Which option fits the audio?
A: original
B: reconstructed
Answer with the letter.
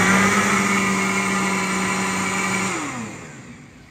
A